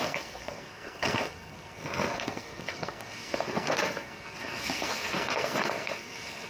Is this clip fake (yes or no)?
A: yes